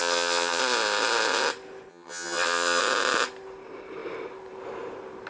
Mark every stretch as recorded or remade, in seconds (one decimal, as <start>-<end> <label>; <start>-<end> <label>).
0.0-0.6 remade; 0.6-1.9 recorded; 1.9-2.8 remade; 2.8-5.3 recorded